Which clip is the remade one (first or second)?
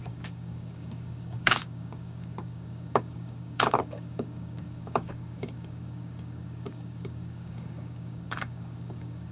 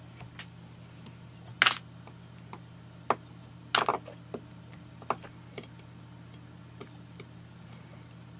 first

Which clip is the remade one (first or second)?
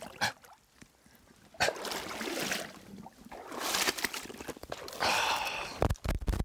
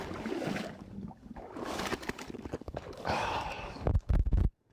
second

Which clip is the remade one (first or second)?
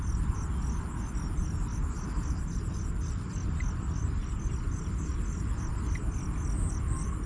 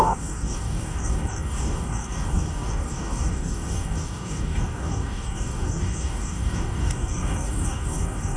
second